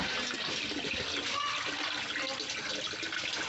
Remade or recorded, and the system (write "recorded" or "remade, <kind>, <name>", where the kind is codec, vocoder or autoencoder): recorded